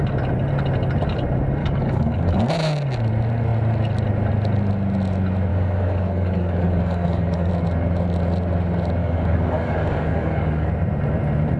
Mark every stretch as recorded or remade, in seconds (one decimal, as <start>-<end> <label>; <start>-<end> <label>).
0.0-1.6 recorded; 1.6-2.5 remade; 2.5-5.5 recorded; 5.5-7.5 remade; 7.5-9.0 recorded; 9.0-10.7 remade; 10.7-11.6 recorded